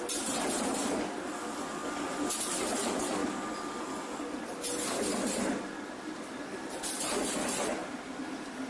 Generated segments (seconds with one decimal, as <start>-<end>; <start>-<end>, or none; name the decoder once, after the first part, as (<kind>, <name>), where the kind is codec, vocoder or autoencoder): none